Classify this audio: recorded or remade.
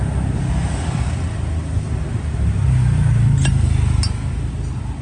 recorded